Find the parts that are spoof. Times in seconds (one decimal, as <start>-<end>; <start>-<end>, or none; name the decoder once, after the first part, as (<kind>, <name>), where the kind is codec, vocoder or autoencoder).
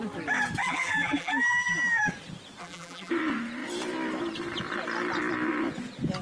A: 0.6-2.1 (vocoder, BigVGAN v2); 2.6-3.1